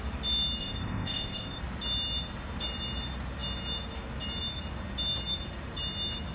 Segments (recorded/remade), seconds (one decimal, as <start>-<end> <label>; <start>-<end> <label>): 0.0-0.6 recorded; 0.6-1.6 remade; 1.6-6.3 recorded